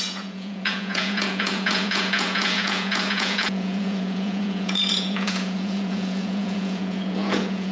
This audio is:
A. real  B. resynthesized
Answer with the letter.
B